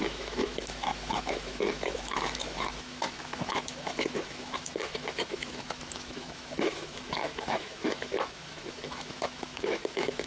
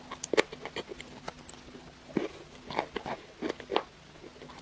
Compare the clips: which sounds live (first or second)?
second